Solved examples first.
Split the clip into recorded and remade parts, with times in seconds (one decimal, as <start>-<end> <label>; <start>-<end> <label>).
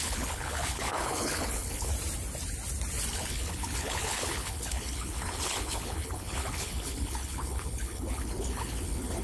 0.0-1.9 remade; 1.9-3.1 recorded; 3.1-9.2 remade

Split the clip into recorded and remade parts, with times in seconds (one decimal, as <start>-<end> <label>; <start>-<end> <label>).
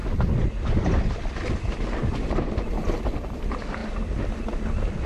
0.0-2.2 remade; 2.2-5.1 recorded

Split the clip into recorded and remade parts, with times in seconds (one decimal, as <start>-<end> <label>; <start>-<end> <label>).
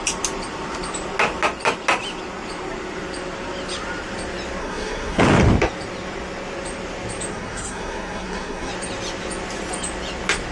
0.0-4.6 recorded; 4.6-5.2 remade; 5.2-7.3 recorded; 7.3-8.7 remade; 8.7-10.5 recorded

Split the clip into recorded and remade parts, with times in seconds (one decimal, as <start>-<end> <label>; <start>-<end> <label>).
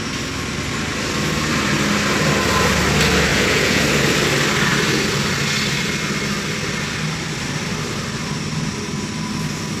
0.0-3.3 recorded; 3.3-3.8 remade; 3.8-9.8 recorded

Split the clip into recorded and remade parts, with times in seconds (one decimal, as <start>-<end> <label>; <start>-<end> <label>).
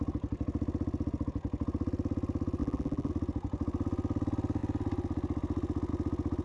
0.0-2.6 recorded; 2.6-3.1 remade; 3.1-6.4 recorded